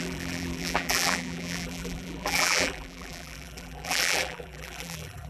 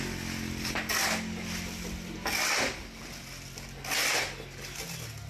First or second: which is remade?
first